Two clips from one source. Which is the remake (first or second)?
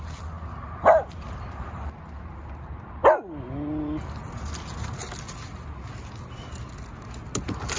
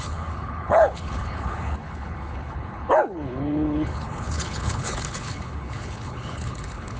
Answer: second